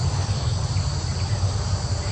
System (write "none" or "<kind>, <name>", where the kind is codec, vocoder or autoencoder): none